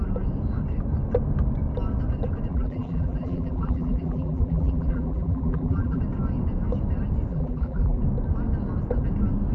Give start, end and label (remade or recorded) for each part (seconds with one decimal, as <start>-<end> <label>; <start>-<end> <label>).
0.0-2.5 recorded; 2.5-6.0 remade; 6.0-7.3 recorded; 7.3-8.0 remade; 8.0-9.5 recorded